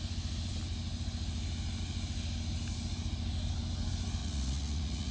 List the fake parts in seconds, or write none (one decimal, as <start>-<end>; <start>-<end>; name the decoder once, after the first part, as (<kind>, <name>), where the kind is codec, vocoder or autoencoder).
4.2-5.1 (vocoder, Vocos)